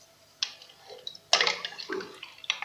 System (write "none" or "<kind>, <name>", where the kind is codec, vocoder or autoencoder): none